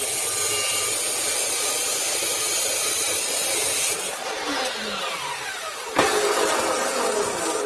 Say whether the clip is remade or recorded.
recorded